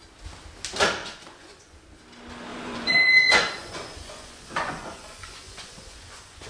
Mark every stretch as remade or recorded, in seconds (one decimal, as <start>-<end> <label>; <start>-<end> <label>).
0.0-1.0 recorded; 1.0-2.0 remade; 2.0-2.5 recorded; 2.5-6.5 remade